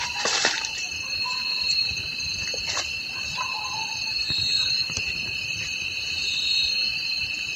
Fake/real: fake